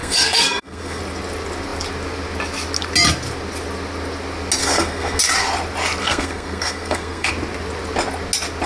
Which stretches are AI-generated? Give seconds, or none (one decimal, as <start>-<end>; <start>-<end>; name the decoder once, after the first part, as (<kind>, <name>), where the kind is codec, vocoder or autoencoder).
0.0-1.0 (codec, SNAC); 4.6-5.2; 6.0-7.3